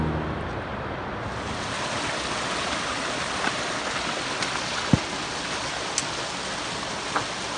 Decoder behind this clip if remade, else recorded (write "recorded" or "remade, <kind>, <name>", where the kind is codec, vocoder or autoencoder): recorded